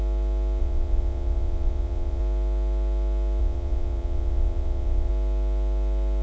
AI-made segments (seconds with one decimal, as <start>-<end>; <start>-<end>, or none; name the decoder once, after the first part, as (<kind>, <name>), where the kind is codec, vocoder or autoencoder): 0.6-2.2 (vocoder, Vocos); 3.4-5.1